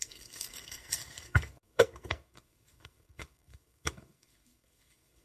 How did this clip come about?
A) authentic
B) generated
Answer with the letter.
B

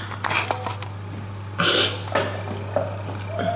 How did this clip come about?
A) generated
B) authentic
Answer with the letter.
B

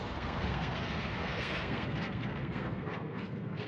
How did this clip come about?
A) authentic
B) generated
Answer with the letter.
B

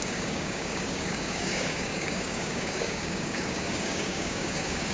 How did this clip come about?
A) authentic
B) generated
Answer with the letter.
B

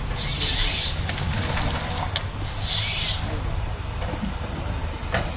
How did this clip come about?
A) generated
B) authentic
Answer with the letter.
B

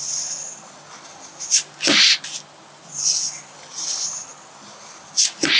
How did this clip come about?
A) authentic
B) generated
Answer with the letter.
A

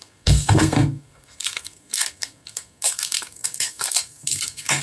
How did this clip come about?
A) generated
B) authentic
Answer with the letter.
A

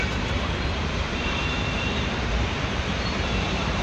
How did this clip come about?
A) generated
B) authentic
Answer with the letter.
A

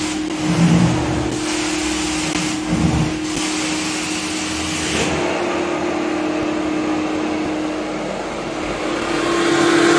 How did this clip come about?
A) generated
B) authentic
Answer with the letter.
B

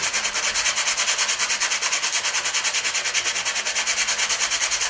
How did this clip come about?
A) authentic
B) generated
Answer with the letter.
A